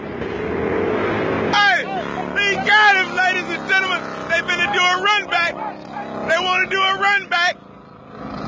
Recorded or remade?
recorded